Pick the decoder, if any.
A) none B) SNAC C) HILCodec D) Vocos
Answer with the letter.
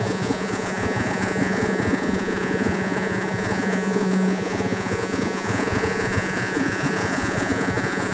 D